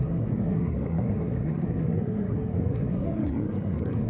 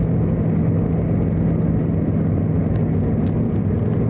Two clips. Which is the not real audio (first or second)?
first